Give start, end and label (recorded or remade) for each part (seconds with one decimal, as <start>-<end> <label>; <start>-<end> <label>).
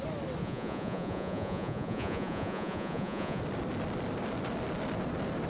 0.0-0.4 recorded; 0.4-3.4 remade; 3.4-5.5 recorded